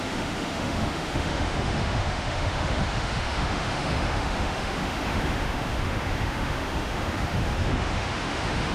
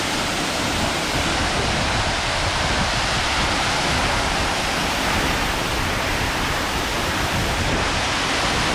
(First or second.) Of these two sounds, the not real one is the first